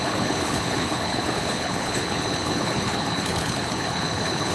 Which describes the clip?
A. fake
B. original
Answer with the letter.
A